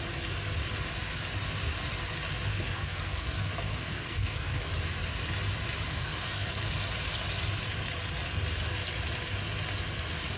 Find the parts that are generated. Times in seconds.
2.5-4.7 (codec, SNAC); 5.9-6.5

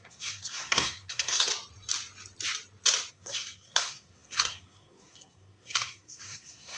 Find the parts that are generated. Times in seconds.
0.0-1.5 (codec, SNAC); 3.1-6.8

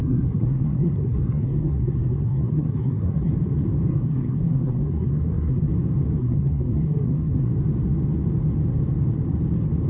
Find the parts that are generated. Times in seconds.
0.0-3.3 (codec, SNAC); 3.9-5.7; 6.2-7.5

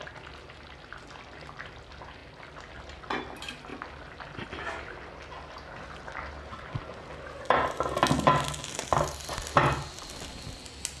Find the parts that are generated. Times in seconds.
none

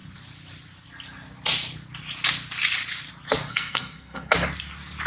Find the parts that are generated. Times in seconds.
3.5-4.3 (codec, SNAC)